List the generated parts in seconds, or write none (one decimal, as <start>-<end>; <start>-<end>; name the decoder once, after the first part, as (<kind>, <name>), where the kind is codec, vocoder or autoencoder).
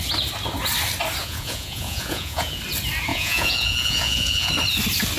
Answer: 1.2-2.6 (vocoder, Vocos); 3.1-4.5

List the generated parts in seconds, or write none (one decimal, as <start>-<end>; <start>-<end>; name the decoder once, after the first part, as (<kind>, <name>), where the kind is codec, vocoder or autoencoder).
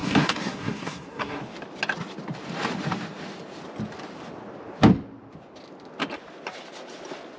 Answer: 0.0-1.4 (codec, SNAC)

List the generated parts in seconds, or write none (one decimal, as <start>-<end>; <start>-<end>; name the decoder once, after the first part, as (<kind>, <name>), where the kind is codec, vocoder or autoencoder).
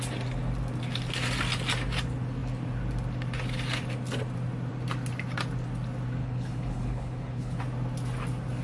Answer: 6.2-7.6 (codec, HILCodec)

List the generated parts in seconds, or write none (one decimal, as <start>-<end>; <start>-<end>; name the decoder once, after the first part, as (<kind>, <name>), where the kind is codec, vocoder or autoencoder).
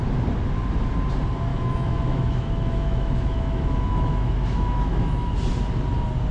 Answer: 1.5-5.3 (autoencoder, DAC-VAE)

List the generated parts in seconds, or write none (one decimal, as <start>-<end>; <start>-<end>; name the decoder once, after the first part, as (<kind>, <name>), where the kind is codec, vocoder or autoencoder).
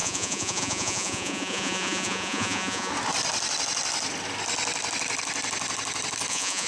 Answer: 0.0-2.9 (vocoder, Vocos); 6.3-6.7